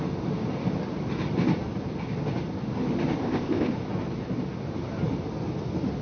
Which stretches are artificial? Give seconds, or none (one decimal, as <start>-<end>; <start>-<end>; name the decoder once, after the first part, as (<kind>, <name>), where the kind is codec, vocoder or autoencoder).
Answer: 3.2-3.7 (codec, ZipCodec)